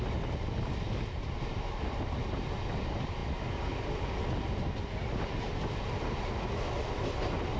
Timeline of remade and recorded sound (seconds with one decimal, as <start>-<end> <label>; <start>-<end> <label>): 0.0-7.6 recorded